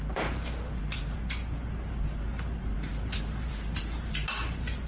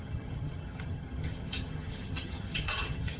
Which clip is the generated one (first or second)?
second